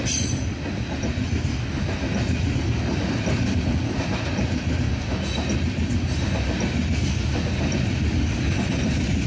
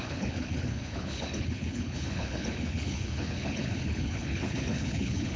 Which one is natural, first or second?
first